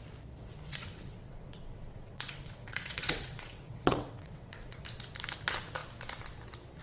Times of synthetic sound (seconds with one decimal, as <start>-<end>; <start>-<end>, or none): 0.7-4.8